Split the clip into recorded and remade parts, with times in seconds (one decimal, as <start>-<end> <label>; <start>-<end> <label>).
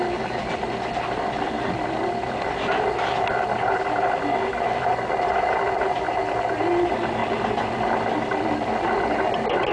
0.0-9.7 recorded